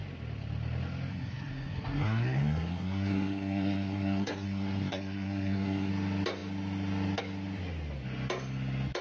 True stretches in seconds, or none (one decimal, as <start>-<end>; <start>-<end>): 0.0-1.1; 5.9-9.0